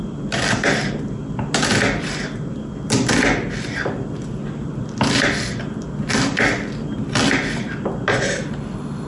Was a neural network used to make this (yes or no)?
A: no